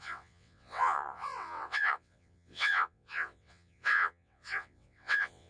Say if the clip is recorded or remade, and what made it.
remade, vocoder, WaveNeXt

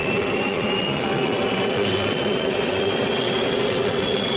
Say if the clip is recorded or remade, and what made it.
remade, vocoder, WaveNeXt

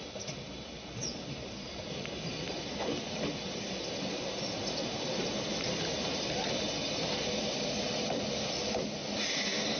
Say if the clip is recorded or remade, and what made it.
recorded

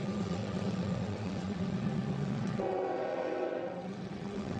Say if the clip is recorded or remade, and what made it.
remade, vocoder, WaveNeXt